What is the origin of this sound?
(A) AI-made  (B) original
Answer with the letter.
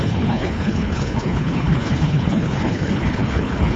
A